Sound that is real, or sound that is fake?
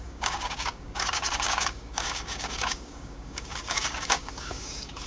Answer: fake